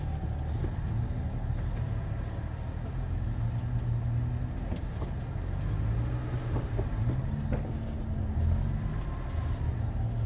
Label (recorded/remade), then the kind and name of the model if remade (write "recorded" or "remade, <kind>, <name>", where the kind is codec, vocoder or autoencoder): recorded